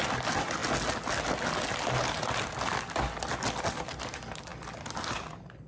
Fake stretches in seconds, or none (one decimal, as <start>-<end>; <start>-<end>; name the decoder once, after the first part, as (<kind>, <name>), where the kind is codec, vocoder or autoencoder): none